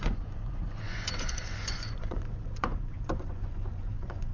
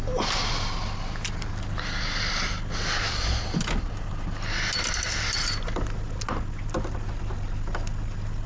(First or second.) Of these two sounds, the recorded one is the second